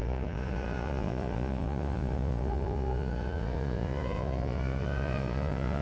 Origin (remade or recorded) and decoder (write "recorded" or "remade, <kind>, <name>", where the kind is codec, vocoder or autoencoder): remade, vocoder, Vocos